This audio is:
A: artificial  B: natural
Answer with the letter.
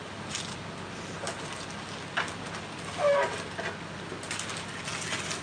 B